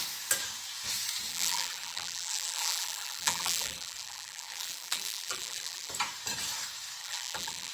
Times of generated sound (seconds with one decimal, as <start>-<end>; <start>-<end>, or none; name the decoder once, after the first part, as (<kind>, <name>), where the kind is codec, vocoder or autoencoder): 1.3-5.9 (vocoder, BigVGAN v2); 7.0-7.7